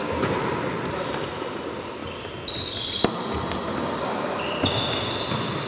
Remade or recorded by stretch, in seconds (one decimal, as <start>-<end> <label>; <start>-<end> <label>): 0.0-5.7 recorded